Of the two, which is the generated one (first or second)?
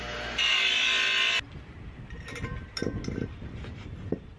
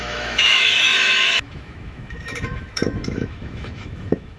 second